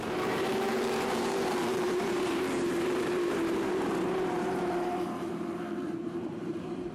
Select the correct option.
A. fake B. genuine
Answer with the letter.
A